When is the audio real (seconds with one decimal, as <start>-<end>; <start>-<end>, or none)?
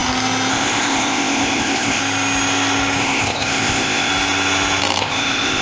0.0-0.5; 2.0-3.0; 4.1-5.0